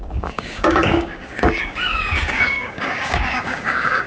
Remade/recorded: remade